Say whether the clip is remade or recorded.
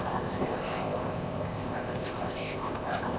remade